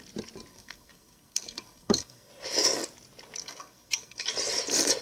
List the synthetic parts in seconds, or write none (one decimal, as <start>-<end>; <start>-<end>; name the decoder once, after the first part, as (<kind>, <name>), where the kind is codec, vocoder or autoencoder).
0.5-2.3 (codec, SNAC); 3.4-4.2